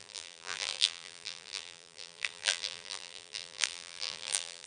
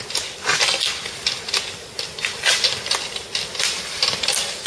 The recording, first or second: second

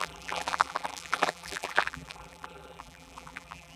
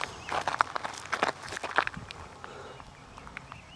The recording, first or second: second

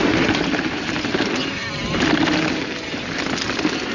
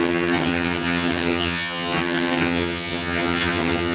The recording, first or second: first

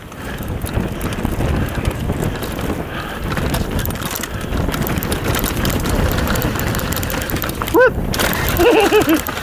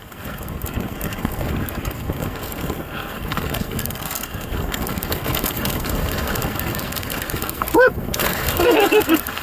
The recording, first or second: first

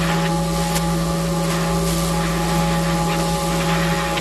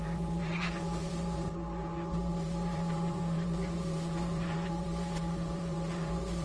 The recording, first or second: first